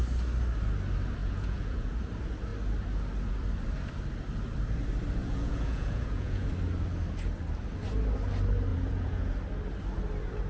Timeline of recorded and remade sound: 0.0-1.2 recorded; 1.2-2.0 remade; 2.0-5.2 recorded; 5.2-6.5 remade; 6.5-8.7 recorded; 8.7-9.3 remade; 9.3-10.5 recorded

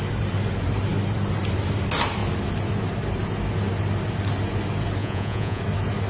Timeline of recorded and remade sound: 0.0-5.0 recorded; 5.0-5.6 remade; 5.6-6.1 recorded

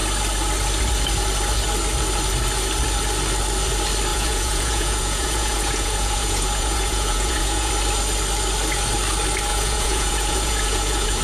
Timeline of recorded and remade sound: 0.0-4.1 recorded; 4.1-7.7 remade; 7.7-9.5 recorded; 9.5-11.2 remade